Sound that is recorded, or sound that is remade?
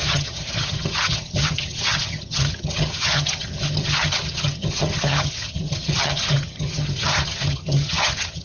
remade